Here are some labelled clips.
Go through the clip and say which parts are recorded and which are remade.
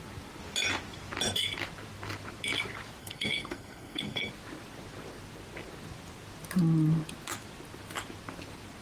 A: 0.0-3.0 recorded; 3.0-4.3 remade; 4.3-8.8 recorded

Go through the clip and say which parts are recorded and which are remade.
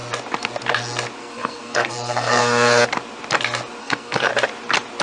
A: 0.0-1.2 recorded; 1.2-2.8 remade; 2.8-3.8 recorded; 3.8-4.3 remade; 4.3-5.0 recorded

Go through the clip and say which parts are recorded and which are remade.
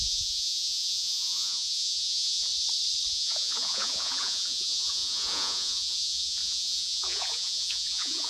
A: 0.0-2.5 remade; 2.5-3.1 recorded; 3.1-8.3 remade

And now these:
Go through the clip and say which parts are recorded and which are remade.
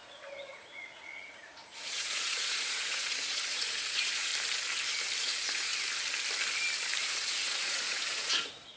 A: 0.0-4.3 remade; 4.3-5.2 recorded; 5.2-5.7 remade; 5.7-7.0 recorded; 7.0-8.8 remade